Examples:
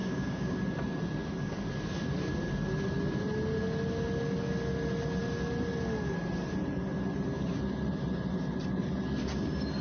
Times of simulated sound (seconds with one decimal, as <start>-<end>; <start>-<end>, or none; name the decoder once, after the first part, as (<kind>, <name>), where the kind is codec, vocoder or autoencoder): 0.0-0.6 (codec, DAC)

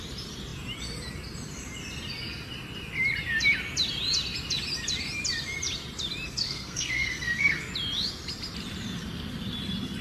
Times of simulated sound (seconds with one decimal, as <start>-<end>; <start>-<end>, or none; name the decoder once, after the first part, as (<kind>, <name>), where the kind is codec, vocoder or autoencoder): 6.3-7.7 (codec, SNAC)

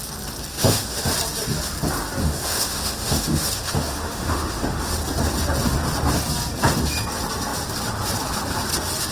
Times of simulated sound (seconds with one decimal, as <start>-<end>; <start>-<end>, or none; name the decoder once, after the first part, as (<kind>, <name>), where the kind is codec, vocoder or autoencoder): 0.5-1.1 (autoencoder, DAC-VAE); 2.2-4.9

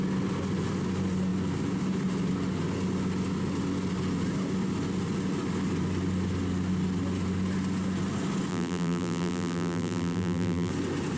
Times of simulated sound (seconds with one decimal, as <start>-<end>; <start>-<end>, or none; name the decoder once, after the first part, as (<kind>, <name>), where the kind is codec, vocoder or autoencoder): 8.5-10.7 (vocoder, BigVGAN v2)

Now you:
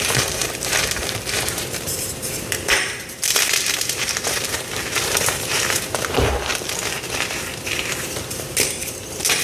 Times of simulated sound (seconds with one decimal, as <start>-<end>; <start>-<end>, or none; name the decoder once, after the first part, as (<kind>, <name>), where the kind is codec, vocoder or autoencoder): 0.0-6.5 (vocoder, BigVGAN v2); 7.6-9.4

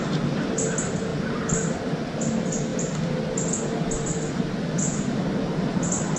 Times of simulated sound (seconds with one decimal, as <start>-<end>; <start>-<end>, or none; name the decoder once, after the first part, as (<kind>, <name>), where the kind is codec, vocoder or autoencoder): none

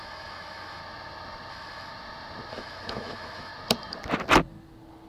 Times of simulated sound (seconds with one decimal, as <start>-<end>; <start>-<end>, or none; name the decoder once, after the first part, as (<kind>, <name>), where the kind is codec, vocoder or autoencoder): 0.0-0.8 (autoencoder, DAC-VAE); 1.5-1.9; 2.5-3.5